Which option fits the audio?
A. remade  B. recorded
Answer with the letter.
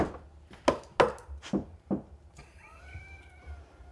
B